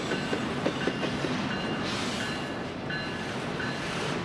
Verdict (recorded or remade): recorded